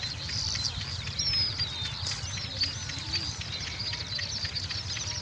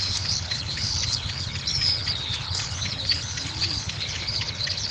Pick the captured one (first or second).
first